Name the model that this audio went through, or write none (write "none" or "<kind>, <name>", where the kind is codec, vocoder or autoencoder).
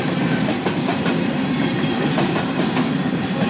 vocoder, BigVGAN v2